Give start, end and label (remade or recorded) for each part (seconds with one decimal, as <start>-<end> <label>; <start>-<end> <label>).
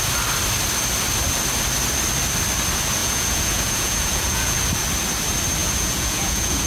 0.0-3.0 recorded; 3.0-4.6 remade; 4.6-5.6 recorded; 5.6-6.7 remade